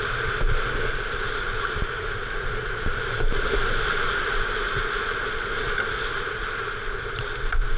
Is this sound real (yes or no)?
yes